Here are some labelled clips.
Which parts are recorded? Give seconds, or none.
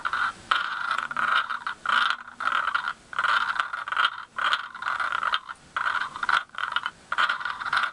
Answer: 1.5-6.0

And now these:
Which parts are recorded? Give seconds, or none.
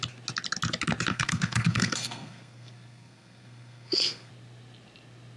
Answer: 0.0-1.1; 4.3-5.4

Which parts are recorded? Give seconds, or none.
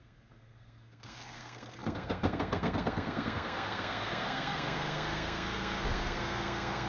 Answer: none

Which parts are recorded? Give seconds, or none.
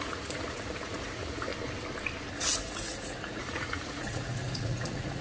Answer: 1.5-2.4